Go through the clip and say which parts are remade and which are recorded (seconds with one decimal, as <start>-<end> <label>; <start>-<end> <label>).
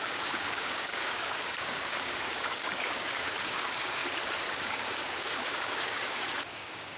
0.0-4.0 remade; 4.0-4.5 recorded; 4.5-7.0 remade